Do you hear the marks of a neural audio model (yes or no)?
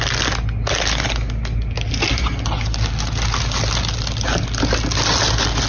no